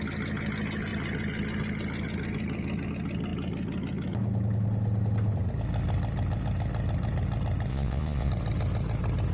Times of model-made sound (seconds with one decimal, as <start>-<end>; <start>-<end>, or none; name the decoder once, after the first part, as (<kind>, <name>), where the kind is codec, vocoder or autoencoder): 7.7-8.3 (vocoder, Vocos)